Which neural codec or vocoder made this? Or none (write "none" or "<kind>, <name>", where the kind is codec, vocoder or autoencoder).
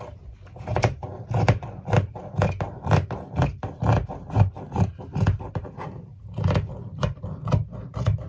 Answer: vocoder, BigVGAN v2